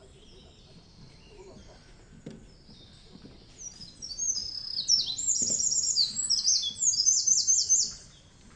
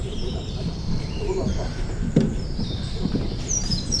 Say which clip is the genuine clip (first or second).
first